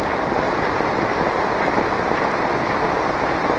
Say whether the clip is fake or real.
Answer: real